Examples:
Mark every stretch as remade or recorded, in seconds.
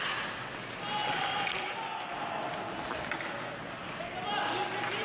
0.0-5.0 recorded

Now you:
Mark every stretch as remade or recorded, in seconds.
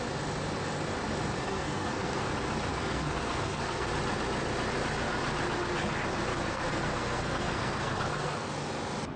0.0-1.4 recorded; 1.4-2.3 remade; 2.3-2.7 recorded; 2.7-3.9 remade; 3.9-6.3 recorded; 6.3-8.5 remade; 8.5-9.2 recorded